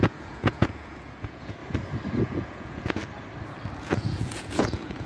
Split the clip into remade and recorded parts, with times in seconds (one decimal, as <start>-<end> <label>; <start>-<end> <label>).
0.0-1.6 remade; 1.6-2.2 recorded; 2.2-3.0 remade; 3.0-3.8 recorded; 3.8-5.1 remade